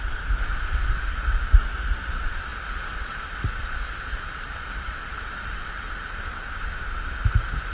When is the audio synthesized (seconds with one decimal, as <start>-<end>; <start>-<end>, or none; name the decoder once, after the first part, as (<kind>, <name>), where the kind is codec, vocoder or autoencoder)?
none